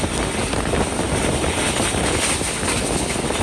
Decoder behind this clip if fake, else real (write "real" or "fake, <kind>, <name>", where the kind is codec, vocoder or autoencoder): real